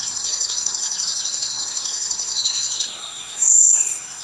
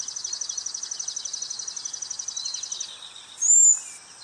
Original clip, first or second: second